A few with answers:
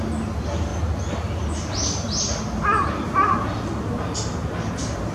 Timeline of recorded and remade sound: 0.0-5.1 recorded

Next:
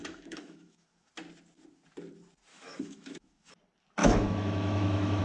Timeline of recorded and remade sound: 0.0-1.1 remade; 1.1-2.5 recorded; 2.5-3.5 remade; 3.5-4.0 recorded; 4.0-5.2 remade

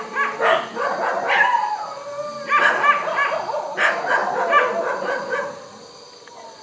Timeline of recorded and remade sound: 0.0-6.6 recorded

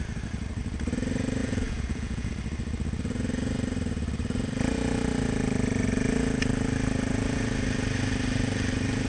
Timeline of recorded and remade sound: 0.0-1.4 recorded; 1.4-2.3 remade; 2.3-9.1 recorded

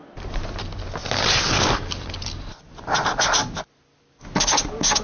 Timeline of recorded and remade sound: 0.0-5.0 recorded